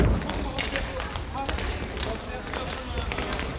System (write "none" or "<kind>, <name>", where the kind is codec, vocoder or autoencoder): none